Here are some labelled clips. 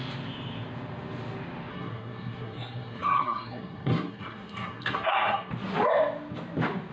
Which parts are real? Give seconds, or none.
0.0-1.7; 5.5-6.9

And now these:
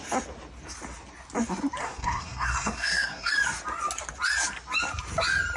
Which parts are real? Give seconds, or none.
0.0-1.8; 3.3-5.6

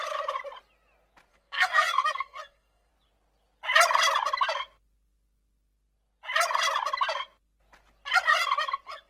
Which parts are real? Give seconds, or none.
0.0-1.3; 2.9-9.1

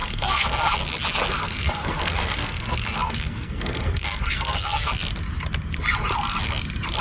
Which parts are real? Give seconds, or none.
0.7-1.4; 4.9-7.0

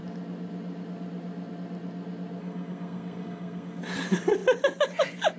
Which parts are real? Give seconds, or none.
0.0-2.4; 3.8-5.4

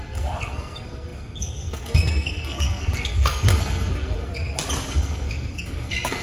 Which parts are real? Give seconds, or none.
4.3-4.9

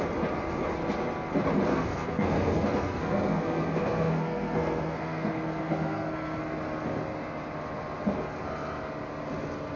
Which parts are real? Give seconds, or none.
0.0-1.7; 6.4-9.8